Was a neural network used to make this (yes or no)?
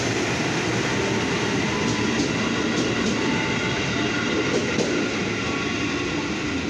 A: no